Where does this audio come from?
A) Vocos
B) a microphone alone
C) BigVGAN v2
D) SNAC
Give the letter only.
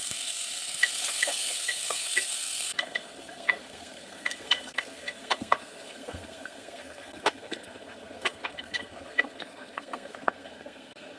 D